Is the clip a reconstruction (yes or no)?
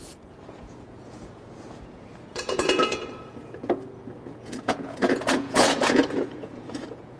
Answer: yes